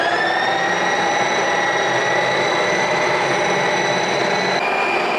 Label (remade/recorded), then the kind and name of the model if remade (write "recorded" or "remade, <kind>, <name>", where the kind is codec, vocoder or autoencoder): recorded